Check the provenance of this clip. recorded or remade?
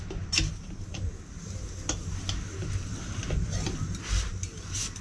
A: recorded